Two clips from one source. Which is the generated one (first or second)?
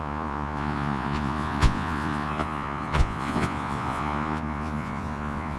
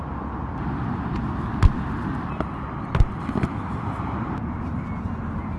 first